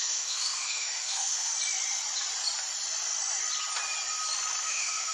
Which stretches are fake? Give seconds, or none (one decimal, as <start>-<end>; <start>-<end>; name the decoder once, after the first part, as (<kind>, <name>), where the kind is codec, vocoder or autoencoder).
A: 0.0-1.5 (autoencoder, DAC-VAE); 4.6-5.1